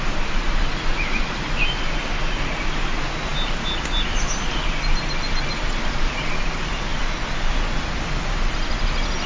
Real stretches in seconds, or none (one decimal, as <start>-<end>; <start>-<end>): 0.0-9.3